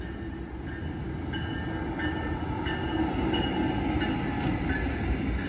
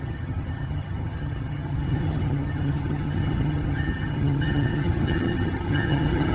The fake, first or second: second